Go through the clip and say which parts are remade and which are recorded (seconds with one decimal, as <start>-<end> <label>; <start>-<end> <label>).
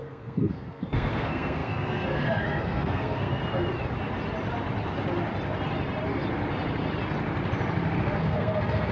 0.0-3.4 remade; 3.4-8.2 recorded; 8.2-8.9 remade